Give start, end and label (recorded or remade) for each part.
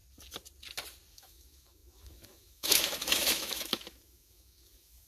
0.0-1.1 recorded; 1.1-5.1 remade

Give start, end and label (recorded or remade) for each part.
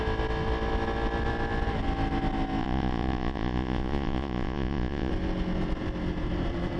0.0-2.6 recorded; 2.6-5.1 remade; 5.1-6.8 recorded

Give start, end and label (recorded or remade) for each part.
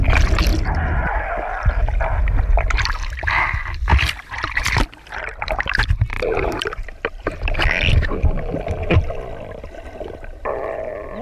0.0-3.9 recorded; 3.9-7.9 remade; 7.9-11.2 recorded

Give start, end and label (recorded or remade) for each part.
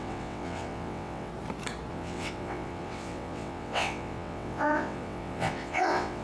0.0-1.3 remade; 1.3-1.9 recorded; 1.9-6.2 remade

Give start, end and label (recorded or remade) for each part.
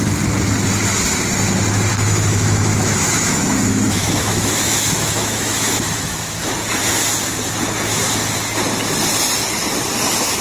0.0-1.9 recorded; 1.9-6.5 remade; 6.5-10.4 recorded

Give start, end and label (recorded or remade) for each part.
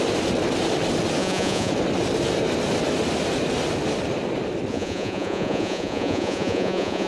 0.0-1.2 recorded; 1.2-1.7 remade; 1.7-4.7 recorded; 4.7-7.1 remade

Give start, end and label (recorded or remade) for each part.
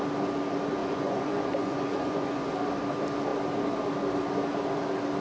0.0-0.8 recorded; 0.8-2.5 remade; 2.5-5.2 recorded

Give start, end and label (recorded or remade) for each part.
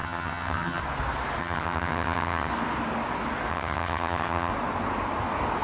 0.0-0.8 remade; 0.8-1.4 recorded; 1.4-2.5 remade; 2.5-3.5 recorded; 3.5-4.5 remade; 4.5-5.6 recorded